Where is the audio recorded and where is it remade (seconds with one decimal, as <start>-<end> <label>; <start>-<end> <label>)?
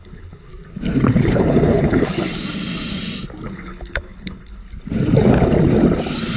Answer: 0.0-0.5 remade; 0.5-1.1 recorded; 1.1-2.3 remade; 2.3-3.5 recorded; 3.5-4.6 remade; 4.6-6.4 recorded